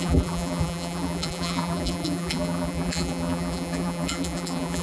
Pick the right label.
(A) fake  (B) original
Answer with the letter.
A